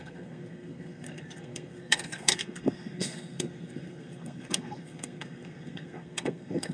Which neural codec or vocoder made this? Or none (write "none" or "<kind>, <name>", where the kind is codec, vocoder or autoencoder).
codec, SNAC